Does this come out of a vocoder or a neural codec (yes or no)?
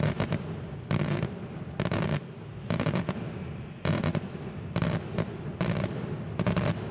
no